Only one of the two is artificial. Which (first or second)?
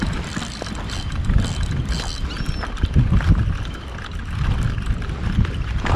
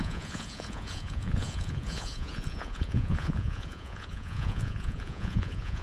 second